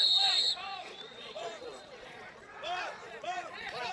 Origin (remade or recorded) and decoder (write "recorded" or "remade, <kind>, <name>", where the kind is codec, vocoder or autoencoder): remade, vocoder, Vocos